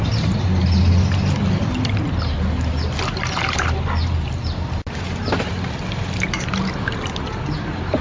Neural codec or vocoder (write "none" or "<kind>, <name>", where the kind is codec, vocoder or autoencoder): none